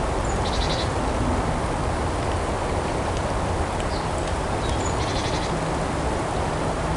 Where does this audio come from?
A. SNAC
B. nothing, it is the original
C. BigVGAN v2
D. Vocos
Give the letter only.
B